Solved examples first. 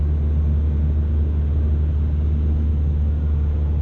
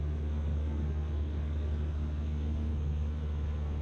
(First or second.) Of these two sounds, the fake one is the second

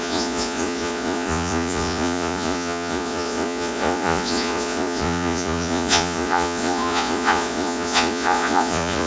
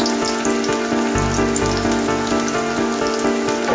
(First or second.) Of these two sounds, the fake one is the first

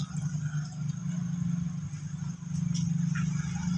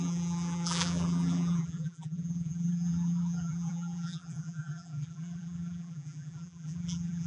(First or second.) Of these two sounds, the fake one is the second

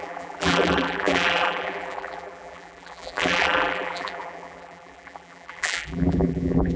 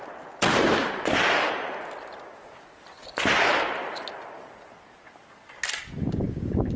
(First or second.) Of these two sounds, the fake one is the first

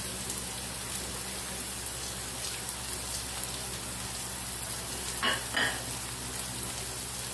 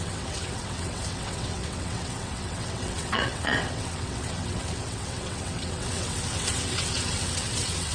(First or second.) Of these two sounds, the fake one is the second